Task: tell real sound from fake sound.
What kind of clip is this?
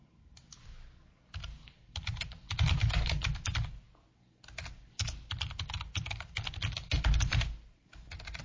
real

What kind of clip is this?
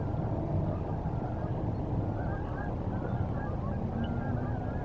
real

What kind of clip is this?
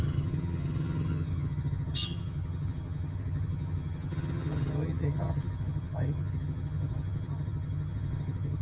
fake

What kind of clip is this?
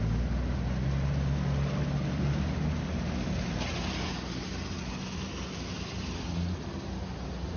real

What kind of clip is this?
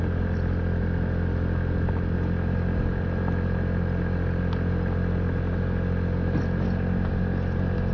real